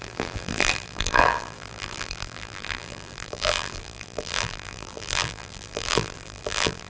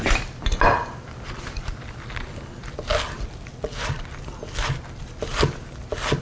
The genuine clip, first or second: second